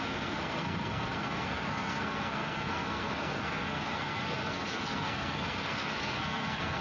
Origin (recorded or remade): remade